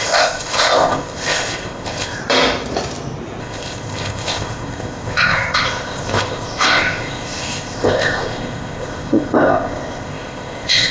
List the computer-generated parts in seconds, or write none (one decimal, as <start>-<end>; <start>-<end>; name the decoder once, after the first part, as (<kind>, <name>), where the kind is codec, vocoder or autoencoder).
0.0-2.2 (codec, ZipCodec); 3.4-10.9